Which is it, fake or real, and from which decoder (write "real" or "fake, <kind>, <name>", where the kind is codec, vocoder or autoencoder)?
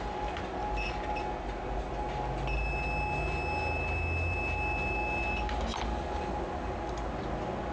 real